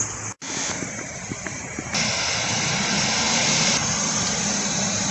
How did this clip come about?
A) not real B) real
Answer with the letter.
B